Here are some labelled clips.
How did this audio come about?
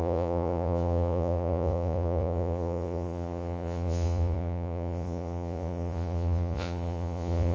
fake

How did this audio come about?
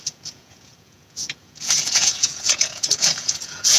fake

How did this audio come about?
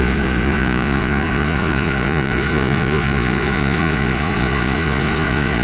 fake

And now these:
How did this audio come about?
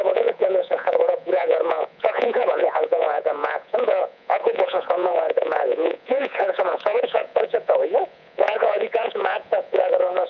fake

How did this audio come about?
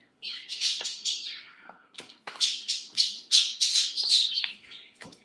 fake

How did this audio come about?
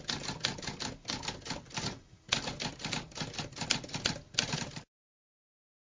real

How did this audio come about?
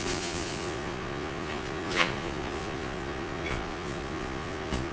fake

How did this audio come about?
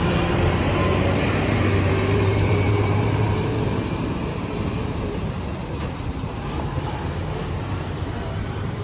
fake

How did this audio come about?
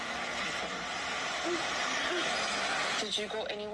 real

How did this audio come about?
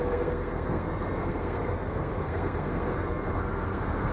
fake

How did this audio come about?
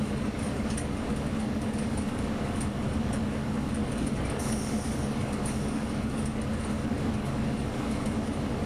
fake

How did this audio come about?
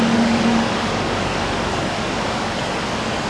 fake